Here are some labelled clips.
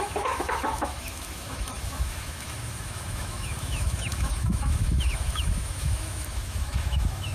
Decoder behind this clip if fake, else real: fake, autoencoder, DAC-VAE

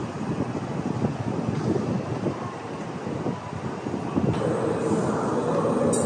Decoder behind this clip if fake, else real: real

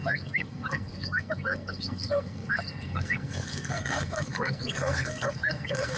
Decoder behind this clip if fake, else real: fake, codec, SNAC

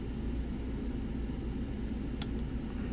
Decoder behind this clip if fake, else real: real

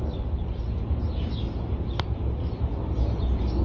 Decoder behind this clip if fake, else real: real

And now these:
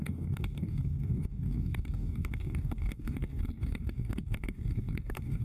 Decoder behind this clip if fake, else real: fake, codec, DAC